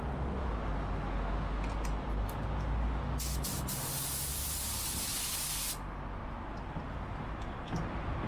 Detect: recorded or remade recorded